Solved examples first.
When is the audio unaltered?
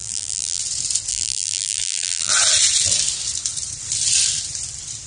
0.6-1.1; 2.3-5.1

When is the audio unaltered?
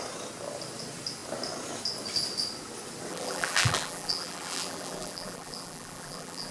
0.0-3.1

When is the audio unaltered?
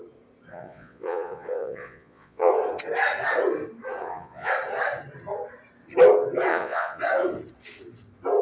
0.0-0.5; 2.5-4.0; 4.5-6.5; 7.0-8.4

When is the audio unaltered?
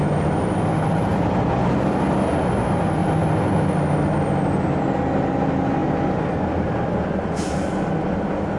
0.0-8.6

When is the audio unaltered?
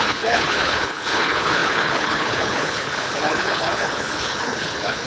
none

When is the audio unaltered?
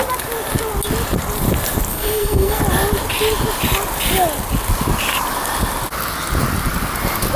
0.0-1.9; 2.6-7.4